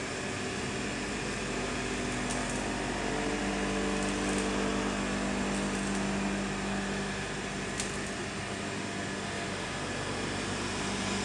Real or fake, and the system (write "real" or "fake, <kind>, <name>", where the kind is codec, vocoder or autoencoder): real